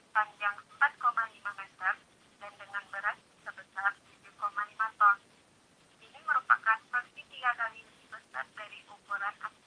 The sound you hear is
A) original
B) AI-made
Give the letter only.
A